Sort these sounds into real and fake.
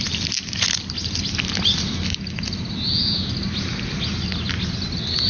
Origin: real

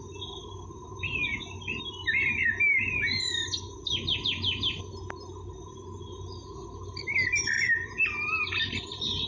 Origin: real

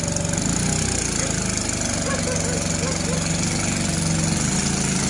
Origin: real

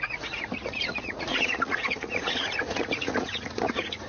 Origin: fake